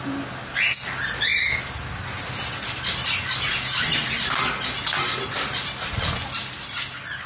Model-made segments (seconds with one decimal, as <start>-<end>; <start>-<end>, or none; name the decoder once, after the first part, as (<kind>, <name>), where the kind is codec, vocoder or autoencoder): none